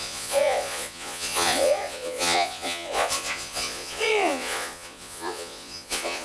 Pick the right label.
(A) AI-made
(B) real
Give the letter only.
A